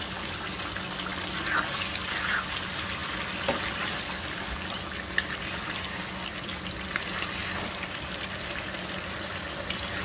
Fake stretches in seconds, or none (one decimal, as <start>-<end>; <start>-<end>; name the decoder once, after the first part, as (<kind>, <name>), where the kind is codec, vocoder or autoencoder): none